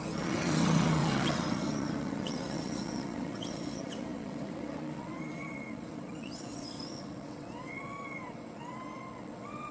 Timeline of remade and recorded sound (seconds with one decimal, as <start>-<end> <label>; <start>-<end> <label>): 0.0-9.7 remade